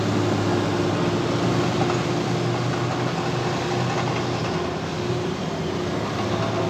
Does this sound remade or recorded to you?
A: recorded